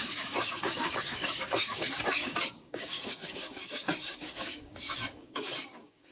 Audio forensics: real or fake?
fake